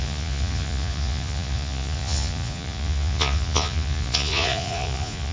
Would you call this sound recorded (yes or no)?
no